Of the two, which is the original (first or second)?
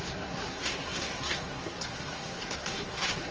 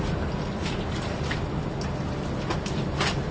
second